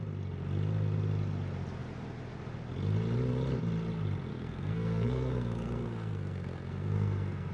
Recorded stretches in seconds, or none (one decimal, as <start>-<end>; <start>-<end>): 0.0-4.3